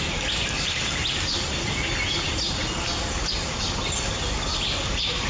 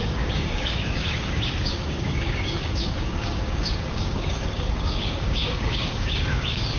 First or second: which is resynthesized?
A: second